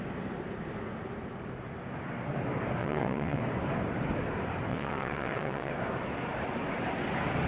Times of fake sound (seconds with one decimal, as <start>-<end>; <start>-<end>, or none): 2.8-3.4; 4.7-5.7